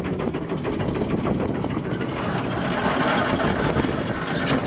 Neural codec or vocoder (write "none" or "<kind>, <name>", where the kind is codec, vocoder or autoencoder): none